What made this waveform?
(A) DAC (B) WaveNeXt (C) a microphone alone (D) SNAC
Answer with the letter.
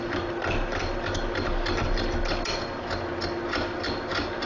C